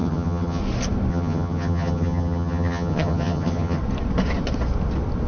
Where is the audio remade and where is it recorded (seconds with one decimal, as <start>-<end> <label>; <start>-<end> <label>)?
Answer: 0.0-0.6 remade; 0.6-1.1 recorded; 1.1-3.8 remade; 3.8-5.3 recorded